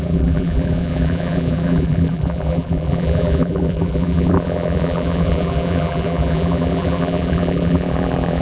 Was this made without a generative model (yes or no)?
no